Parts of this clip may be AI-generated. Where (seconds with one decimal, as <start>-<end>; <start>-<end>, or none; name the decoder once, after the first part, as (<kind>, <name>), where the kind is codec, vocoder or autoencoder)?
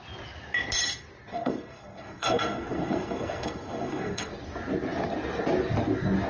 1.3-4.3 (codec, SNAC)